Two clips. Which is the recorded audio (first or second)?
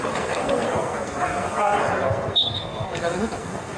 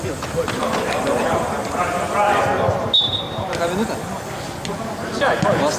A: second